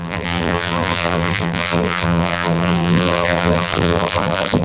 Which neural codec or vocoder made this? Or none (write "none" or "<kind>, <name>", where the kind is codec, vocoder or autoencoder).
vocoder, BigVGAN v2